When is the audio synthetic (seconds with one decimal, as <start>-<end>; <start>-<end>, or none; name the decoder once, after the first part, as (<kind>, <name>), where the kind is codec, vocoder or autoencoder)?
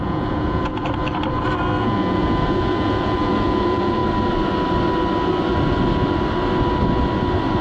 0.0-0.7 (vocoder, Vocos); 1.8-4.0